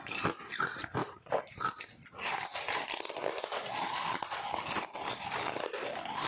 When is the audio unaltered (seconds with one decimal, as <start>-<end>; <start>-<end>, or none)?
1.0-1.8; 2.5-4.1